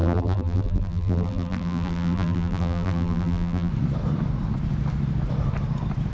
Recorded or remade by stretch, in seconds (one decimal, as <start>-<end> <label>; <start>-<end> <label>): 0.0-3.7 remade; 3.7-6.1 recorded

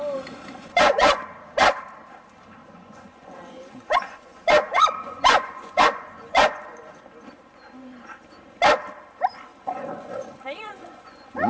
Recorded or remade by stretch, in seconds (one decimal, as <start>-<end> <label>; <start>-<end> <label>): 0.0-0.6 recorded; 0.6-1.2 remade; 1.2-2.6 recorded; 2.6-6.9 remade; 6.9-9.5 recorded; 9.5-11.5 remade